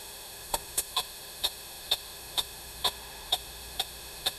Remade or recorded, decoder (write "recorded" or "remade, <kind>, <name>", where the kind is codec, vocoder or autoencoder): remade, autoencoder, DAC-VAE